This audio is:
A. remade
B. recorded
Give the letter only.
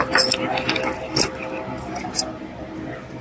B